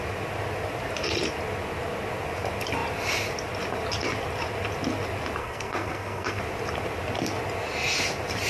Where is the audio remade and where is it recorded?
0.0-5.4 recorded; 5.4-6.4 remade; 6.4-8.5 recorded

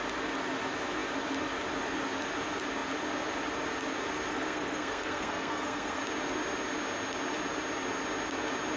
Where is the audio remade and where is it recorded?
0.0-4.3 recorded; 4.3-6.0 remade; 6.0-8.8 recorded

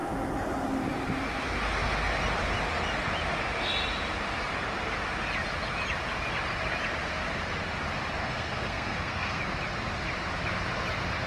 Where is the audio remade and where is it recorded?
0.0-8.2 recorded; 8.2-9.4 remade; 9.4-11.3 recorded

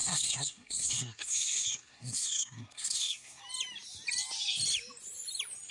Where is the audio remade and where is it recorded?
0.0-3.4 remade; 3.4-5.7 recorded